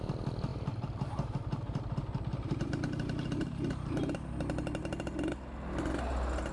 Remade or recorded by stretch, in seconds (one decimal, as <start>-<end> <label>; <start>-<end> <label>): 0.0-0.5 recorded; 0.5-4.4 remade; 4.4-6.5 recorded